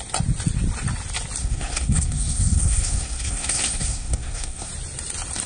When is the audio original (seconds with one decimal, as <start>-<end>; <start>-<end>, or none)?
0.0-1.4; 4.7-5.5